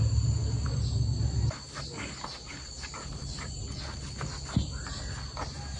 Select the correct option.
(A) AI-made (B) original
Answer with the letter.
B